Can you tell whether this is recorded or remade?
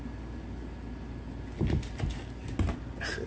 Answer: recorded